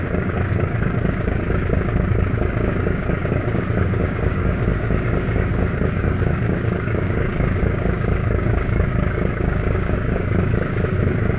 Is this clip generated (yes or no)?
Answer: yes